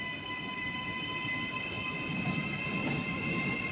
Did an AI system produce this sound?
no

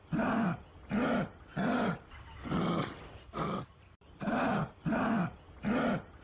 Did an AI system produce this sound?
no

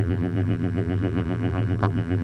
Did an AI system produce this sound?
yes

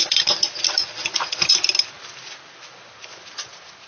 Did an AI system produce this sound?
no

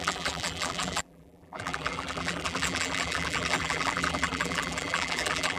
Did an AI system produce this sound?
yes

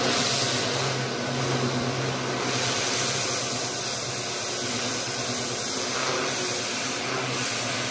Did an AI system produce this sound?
no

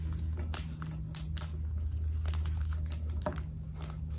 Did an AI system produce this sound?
no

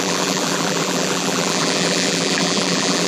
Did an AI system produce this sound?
yes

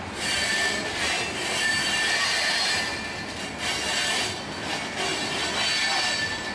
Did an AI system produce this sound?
no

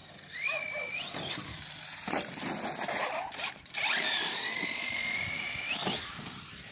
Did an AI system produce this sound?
yes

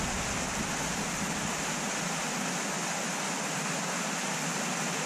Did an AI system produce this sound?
no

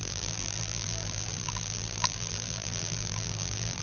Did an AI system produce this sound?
yes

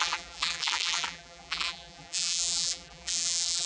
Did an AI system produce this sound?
yes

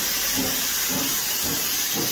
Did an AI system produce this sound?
no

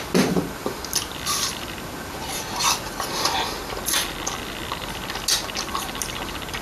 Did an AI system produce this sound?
no